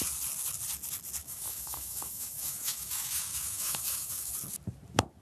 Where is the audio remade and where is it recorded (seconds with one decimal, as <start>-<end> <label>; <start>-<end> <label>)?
0.0-1.2 recorded; 1.2-4.3 remade; 4.3-5.2 recorded